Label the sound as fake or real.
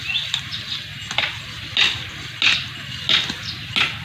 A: real